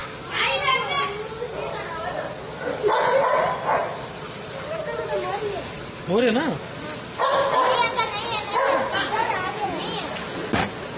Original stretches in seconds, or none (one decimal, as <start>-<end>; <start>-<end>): 0.0-9.2; 9.8-11.0